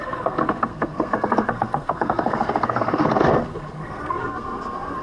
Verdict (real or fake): fake